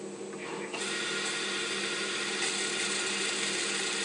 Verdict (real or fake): real